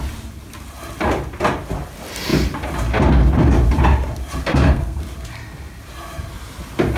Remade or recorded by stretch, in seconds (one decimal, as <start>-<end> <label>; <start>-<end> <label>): 0.0-4.4 recorded; 4.4-5.0 remade; 5.0-7.0 recorded